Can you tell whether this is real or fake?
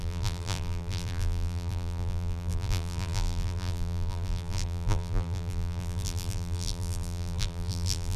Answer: fake